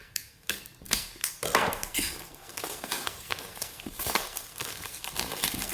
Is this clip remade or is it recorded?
remade